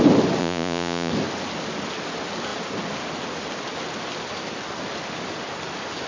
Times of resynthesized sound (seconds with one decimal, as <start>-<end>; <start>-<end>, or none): 0.4-1.1